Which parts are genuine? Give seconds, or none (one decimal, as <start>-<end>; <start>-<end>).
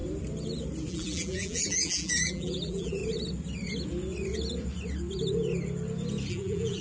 0.0-0.9; 3.0-6.3